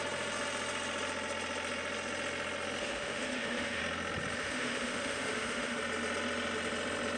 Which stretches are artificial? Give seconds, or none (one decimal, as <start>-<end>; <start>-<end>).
2.8-3.8; 4.4-5.8